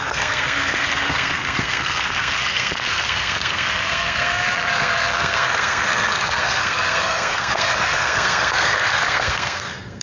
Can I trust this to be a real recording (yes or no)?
no